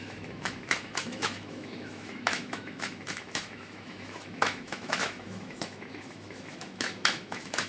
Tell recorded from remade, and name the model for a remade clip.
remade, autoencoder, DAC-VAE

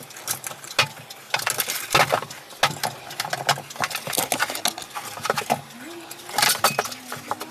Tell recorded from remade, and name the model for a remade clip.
recorded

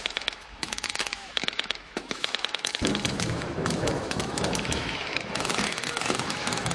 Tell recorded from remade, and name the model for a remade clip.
remade, autoencoder, DAC-VAE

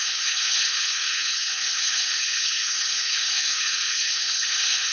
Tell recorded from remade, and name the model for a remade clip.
remade, codec, HILCodec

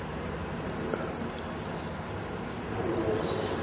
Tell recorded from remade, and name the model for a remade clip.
recorded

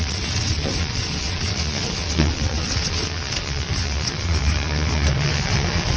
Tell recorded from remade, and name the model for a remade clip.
remade, vocoder, WaveNeXt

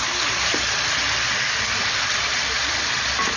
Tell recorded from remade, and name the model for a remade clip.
recorded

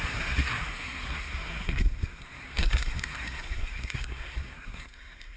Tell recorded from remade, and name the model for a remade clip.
remade, codec, SNAC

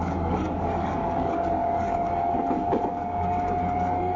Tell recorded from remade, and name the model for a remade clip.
remade, codec, DAC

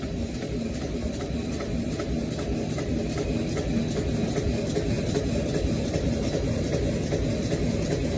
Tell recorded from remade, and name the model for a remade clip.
recorded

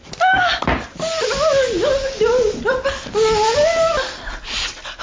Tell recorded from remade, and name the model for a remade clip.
recorded